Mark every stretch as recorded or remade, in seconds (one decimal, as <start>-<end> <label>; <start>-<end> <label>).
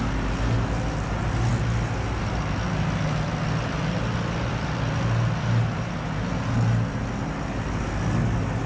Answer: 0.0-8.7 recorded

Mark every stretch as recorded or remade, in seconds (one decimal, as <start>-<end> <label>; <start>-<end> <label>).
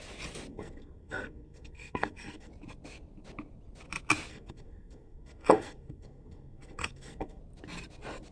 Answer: 0.0-0.5 recorded; 0.5-2.5 remade; 2.5-4.3 recorded; 4.3-7.4 remade; 7.4-8.3 recorded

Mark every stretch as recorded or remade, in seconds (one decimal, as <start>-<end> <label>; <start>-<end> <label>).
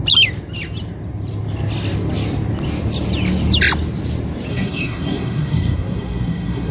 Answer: 0.0-4.5 recorded; 4.5-6.7 remade